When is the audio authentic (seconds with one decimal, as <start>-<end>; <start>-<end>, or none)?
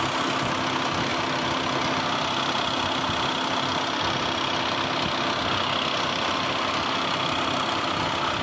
0.0-8.4